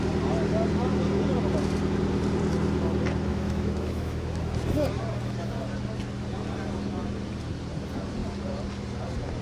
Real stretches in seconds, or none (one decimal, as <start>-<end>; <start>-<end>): 0.0-3.3; 4.4-9.4